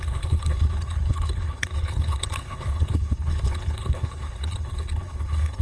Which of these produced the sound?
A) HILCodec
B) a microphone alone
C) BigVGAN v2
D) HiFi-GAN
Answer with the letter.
A